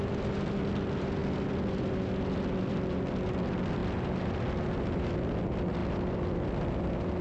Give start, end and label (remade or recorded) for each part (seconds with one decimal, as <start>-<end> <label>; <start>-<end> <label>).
0.0-7.2 recorded